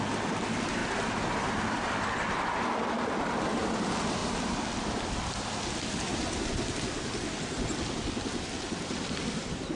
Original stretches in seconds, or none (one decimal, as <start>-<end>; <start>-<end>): 0.0-9.8